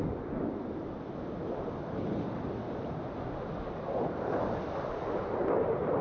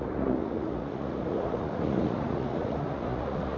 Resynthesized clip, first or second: second